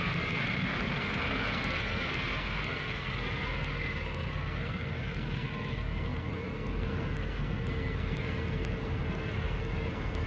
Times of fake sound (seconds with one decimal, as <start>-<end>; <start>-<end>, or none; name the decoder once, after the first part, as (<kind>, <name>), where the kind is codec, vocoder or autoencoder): 0.0-10.3 (codec, SNAC)